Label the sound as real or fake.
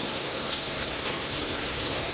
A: fake